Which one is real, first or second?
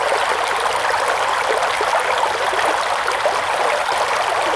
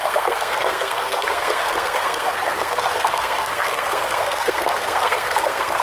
first